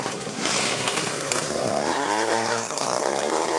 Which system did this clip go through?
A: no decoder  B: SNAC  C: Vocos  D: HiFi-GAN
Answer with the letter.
B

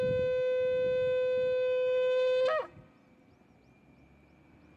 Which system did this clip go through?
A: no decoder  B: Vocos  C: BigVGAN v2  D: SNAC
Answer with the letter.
A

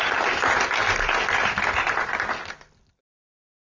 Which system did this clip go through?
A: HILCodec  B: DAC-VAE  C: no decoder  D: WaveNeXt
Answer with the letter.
C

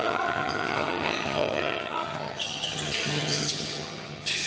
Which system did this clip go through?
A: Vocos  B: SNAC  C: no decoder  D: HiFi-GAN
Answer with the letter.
D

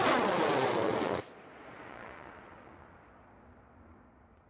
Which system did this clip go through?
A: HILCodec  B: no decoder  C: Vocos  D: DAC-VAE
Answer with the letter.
C